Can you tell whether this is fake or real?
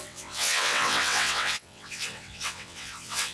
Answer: fake